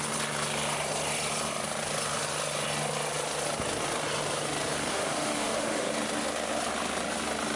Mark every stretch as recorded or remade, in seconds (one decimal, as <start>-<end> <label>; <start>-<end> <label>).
0.0-4.9 recorded; 4.9-5.9 remade; 5.9-7.6 recorded